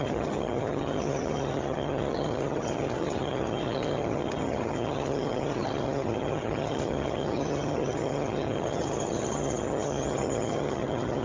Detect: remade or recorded remade